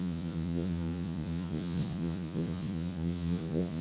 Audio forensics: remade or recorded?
remade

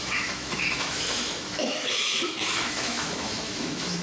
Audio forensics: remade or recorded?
remade